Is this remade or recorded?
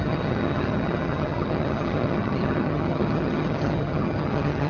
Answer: remade